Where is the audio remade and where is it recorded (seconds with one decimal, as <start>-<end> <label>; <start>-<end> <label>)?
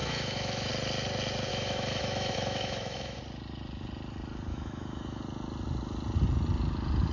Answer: 0.0-0.7 remade; 0.7-1.5 recorded; 1.5-3.2 remade; 3.2-4.5 recorded; 4.5-5.2 remade; 5.2-7.1 recorded